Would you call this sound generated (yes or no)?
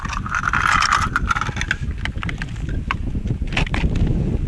no